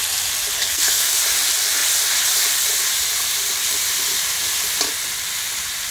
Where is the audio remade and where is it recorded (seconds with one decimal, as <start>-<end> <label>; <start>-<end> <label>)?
0.0-0.6 recorded; 0.6-1.2 remade; 1.2-5.9 recorded